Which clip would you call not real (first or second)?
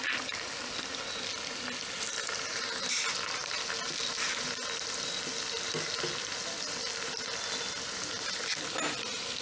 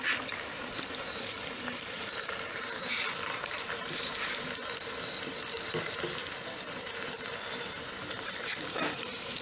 second